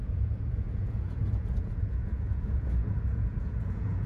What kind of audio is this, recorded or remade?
remade